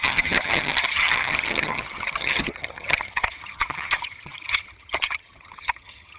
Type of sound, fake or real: fake